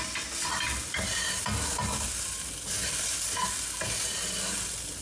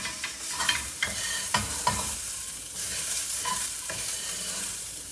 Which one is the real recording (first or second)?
first